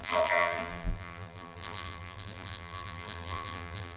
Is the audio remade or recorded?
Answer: remade